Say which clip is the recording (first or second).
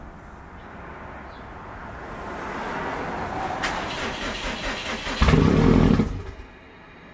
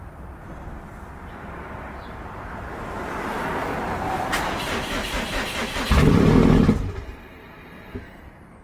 first